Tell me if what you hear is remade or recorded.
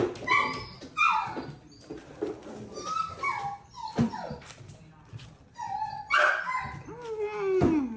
recorded